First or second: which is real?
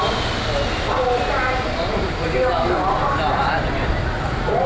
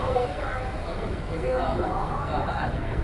first